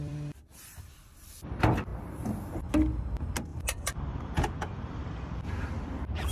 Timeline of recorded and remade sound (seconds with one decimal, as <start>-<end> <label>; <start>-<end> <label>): 0.0-1.3 remade; 1.3-3.5 recorded; 3.5-5.5 remade; 5.5-6.3 recorded